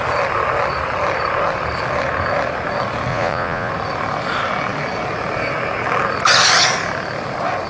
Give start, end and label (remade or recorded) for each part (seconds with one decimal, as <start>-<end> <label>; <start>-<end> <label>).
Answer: 0.0-3.1 recorded; 3.1-3.7 remade; 3.7-7.7 recorded